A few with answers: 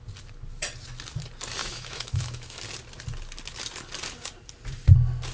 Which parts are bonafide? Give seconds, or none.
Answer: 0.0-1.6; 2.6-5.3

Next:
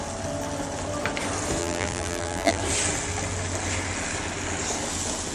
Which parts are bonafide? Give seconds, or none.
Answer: 0.0-1.6; 2.6-5.3